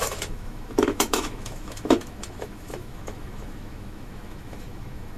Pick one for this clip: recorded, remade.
remade